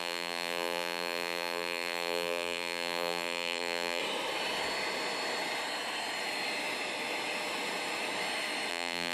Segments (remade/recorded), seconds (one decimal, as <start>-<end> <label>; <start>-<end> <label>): 0.0-4.0 remade; 4.0-8.7 recorded; 8.7-9.1 remade

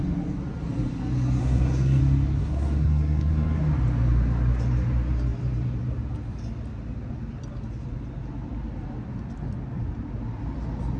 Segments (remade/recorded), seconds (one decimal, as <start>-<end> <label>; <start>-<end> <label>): 0.0-1.4 recorded; 1.4-2.0 remade; 2.0-2.4 recorded; 2.4-3.6 remade; 3.6-11.0 recorded

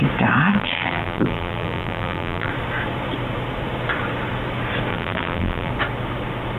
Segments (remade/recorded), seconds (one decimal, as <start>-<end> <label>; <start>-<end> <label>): 0.0-0.5 recorded; 0.5-2.5 remade; 2.5-4.9 recorded; 4.9-5.7 remade; 5.7-6.6 recorded